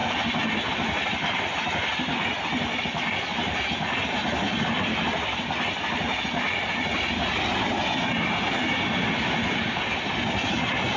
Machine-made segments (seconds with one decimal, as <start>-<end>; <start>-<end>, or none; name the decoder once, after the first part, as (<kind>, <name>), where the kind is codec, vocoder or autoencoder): none

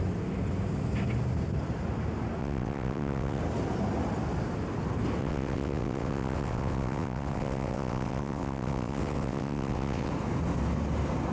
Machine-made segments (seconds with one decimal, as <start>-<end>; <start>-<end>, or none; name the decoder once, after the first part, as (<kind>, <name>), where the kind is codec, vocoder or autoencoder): 2.4-3.4 (vocoder, WaveNeXt); 5.2-10.1